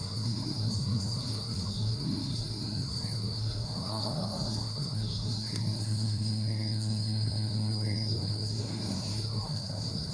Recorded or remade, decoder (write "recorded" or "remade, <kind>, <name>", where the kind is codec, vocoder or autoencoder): remade, codec, SNAC